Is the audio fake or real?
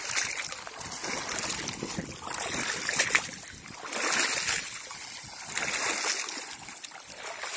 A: real